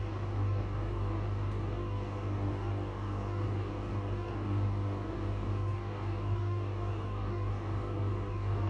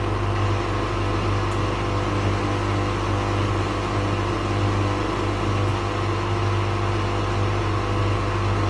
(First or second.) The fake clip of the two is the first